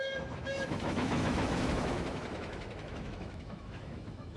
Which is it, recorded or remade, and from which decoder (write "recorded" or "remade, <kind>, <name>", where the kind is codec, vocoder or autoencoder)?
remade, autoencoder, DAC-VAE